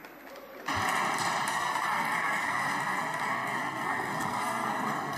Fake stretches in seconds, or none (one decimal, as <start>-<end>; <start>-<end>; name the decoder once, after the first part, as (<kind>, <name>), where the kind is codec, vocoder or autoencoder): 1.5-5.2 (codec, SNAC)